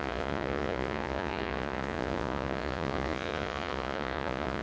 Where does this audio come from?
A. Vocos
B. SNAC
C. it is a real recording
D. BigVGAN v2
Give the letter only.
A